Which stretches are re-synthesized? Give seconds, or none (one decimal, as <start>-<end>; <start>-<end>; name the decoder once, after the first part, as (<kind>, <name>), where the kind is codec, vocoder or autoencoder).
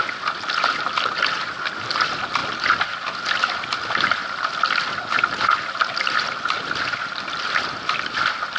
0.0-2.4 (vocoder, BigVGAN v2); 3.3-8.6